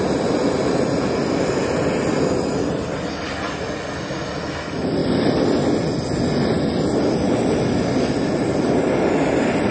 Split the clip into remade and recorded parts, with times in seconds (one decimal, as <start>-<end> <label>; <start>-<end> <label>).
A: 0.0-9.7 recorded